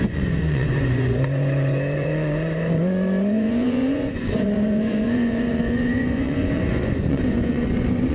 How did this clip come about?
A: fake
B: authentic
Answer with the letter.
A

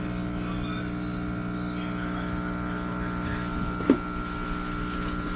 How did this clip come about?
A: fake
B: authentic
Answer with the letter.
B